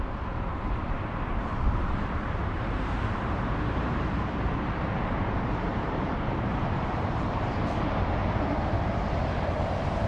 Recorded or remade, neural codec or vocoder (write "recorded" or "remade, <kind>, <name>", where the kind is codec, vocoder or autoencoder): remade, vocoder, BigVGAN v2